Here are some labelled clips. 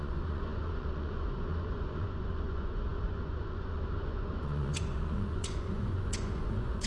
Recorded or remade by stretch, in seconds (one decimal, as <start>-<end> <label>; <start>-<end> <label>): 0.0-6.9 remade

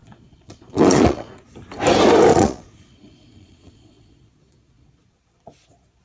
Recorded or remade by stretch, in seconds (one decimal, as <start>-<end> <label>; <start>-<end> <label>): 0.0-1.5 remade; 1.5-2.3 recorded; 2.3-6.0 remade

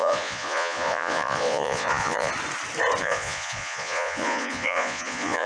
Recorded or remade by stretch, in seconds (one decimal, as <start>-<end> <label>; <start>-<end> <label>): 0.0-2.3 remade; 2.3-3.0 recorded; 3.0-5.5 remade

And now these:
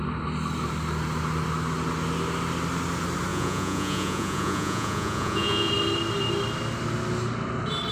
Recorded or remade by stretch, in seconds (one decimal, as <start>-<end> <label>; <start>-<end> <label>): 0.0-3.3 recorded; 3.3-5.7 remade; 5.7-7.9 recorded